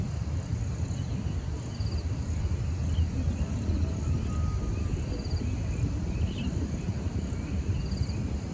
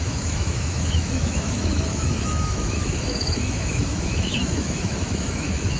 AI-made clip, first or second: second